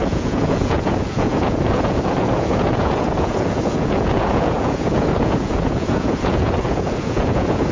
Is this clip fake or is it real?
fake